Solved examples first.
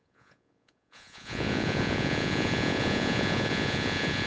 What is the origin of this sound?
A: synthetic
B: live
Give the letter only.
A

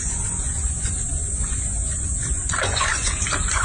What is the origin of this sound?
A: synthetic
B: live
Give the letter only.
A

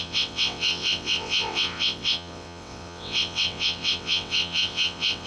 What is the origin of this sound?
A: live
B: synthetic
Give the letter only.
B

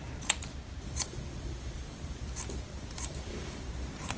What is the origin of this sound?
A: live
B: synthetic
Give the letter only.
A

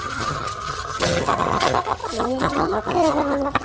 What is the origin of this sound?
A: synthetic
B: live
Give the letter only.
A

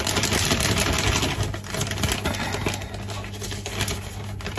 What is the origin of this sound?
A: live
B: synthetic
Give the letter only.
A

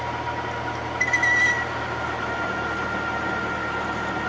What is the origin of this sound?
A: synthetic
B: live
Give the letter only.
B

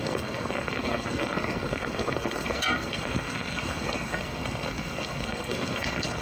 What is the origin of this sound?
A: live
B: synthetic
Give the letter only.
B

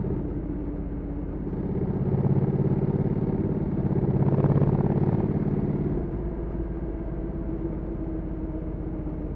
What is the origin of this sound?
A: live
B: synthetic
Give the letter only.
A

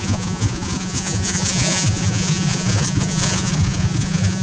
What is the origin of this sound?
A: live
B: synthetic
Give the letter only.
B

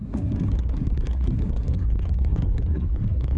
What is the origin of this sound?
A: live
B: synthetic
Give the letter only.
B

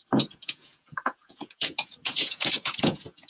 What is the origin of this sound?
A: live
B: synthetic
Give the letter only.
B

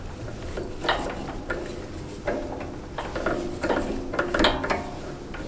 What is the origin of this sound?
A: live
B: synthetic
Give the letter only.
A